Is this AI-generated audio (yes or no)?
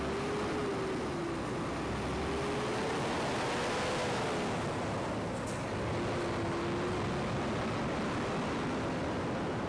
no